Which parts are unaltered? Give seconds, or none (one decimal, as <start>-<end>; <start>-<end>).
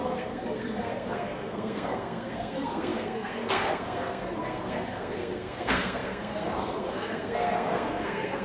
none